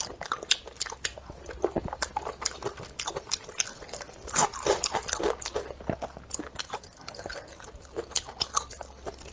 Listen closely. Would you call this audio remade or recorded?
recorded